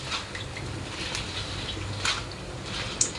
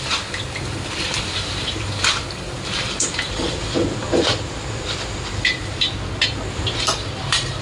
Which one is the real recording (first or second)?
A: first